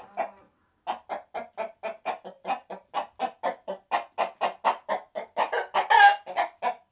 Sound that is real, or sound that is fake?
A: real